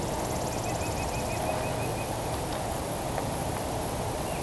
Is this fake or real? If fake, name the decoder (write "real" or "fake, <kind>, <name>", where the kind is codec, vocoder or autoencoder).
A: real